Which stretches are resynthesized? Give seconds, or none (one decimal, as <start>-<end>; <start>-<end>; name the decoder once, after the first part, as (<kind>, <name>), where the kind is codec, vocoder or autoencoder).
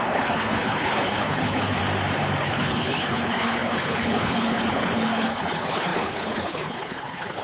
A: 0.0-1.8 (codec, HILCodec); 2.4-7.4